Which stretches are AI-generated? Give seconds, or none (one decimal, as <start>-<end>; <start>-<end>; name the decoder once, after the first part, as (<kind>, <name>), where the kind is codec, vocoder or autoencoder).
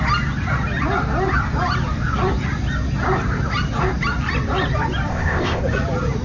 5.1-5.6 (codec, ZipCodec)